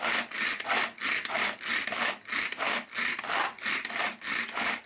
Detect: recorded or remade recorded